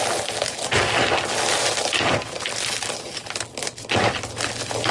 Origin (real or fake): real